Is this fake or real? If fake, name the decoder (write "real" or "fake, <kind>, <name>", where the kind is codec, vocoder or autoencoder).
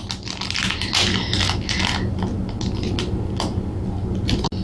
real